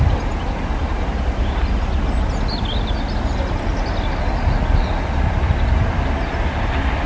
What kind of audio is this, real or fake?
real